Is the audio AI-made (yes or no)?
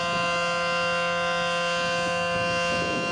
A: no